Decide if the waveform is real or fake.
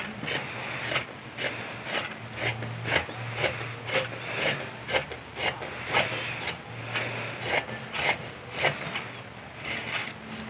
real